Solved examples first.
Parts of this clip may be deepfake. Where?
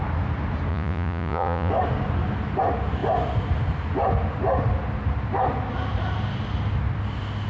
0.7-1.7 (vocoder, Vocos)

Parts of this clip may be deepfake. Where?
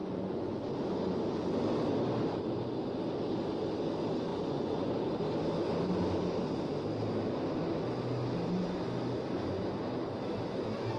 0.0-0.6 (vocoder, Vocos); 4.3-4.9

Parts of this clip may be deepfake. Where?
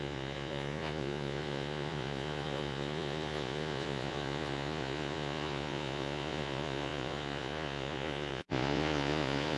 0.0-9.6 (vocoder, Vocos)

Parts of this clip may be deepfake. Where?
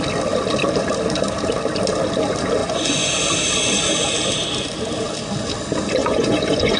2.6-3.1 (vocoder, Vocos); 6.0-6.8